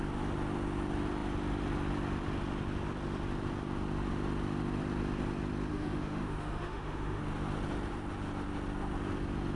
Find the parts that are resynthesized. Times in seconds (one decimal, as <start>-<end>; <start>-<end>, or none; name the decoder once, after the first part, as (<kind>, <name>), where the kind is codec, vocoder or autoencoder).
5.7-7.2 (autoencoder, DAC-VAE)